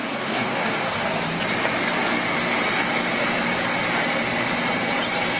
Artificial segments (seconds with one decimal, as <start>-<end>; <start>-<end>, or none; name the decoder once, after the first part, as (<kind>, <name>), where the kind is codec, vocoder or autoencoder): 0.0-1.1 (codec, DAC)